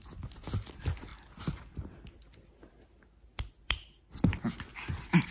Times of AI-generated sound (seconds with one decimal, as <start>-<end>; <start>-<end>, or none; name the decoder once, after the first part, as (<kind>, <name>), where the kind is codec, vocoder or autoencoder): none